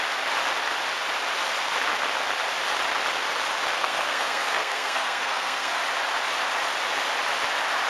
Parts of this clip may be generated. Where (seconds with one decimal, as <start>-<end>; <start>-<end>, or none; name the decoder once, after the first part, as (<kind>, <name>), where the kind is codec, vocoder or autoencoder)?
3.7-5.8 (codec, SNAC)

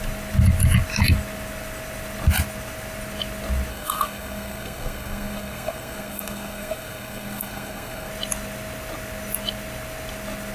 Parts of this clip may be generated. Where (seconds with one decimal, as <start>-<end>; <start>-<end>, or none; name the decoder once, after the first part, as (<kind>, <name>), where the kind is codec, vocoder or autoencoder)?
3.7-8.1 (codec, SNAC)

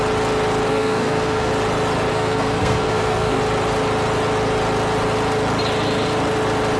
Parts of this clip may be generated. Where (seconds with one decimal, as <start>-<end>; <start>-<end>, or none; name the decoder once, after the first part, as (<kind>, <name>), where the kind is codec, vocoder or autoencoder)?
0.7-1.5 (codec, SNAC); 2.1-3.4

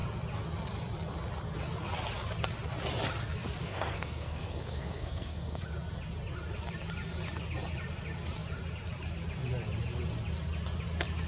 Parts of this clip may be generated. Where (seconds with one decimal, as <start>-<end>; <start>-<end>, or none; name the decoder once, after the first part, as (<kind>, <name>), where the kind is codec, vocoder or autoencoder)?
3.6-5.6 (codec, SNAC)

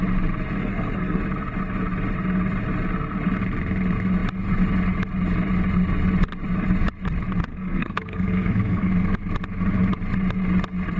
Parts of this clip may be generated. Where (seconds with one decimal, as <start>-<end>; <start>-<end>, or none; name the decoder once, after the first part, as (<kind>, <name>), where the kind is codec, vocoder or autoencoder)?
0.6-1.2 (codec, SNAC); 7.5-8.9

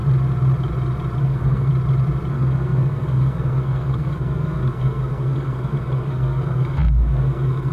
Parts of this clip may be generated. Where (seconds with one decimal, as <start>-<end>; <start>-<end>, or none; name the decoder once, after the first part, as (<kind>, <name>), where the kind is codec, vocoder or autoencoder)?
1.2-1.7 (codec, SNAC); 2.3-7.7

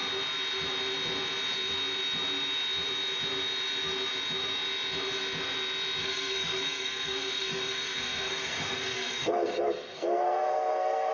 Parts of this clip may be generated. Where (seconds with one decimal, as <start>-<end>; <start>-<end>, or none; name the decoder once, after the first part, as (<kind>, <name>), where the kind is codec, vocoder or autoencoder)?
6.0-11.1 (codec, SNAC)

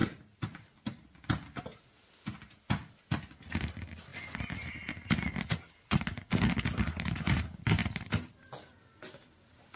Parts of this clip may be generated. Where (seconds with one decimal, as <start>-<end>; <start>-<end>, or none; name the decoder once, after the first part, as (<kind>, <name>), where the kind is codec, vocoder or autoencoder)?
none